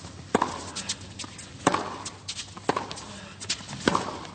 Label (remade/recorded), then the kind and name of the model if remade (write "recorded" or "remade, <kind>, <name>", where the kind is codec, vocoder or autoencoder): recorded